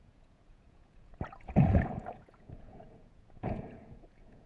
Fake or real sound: fake